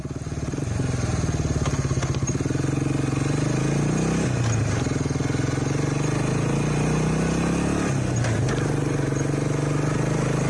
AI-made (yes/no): no